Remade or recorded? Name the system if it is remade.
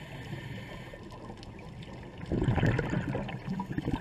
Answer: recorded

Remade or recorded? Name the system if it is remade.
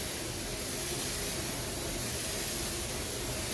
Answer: recorded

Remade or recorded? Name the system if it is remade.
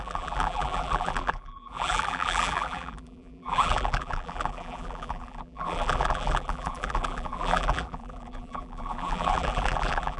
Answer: remade, vocoder, BigVGAN v2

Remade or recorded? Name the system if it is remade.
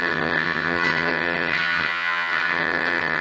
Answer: remade, vocoder, HiFi-GAN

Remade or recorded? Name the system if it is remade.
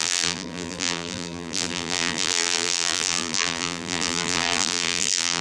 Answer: remade, vocoder, BigVGAN v2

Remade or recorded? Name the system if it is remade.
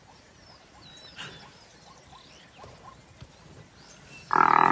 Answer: recorded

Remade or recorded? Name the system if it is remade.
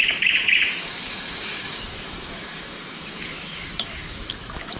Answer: remade, autoencoder, DAC-VAE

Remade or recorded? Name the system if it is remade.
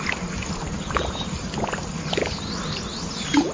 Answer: recorded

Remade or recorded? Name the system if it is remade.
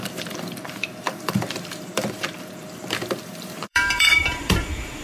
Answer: remade, vocoder, BigVGAN v2